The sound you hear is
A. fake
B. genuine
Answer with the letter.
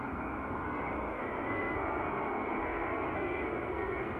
A